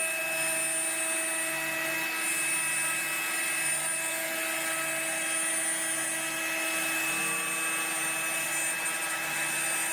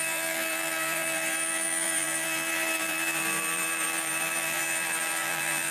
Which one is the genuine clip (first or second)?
first